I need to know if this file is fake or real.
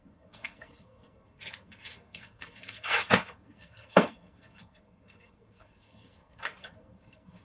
fake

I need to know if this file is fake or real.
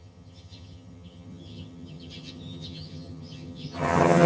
fake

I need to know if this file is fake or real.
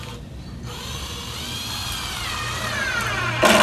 real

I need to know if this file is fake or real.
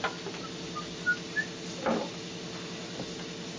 real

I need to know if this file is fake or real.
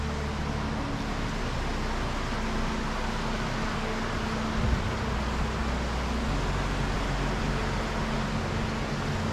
real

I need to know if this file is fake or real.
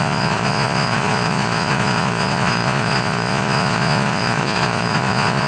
fake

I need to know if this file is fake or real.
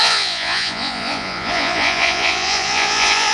fake